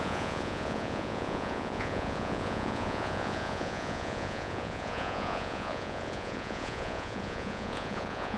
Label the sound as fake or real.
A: fake